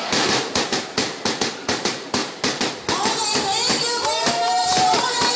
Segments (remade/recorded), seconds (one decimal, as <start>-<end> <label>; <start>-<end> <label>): 0.0-2.2 remade; 2.2-4.3 recorded; 4.3-5.4 remade